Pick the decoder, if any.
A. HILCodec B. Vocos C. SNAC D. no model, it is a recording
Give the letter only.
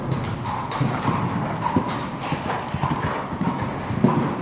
D